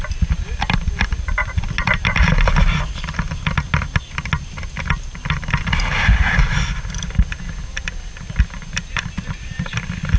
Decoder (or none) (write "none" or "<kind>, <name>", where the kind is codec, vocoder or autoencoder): none